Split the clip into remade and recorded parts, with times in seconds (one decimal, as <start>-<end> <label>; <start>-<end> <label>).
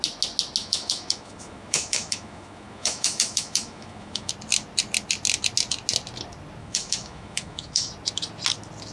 0.0-0.6 recorded; 0.6-4.3 remade; 4.3-6.6 recorded; 6.6-7.9 remade; 7.9-8.9 recorded